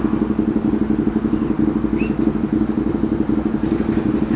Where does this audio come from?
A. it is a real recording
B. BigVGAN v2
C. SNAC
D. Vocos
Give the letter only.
A